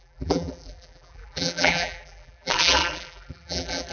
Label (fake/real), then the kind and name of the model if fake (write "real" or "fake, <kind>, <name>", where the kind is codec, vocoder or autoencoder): fake, vocoder, BigVGAN v2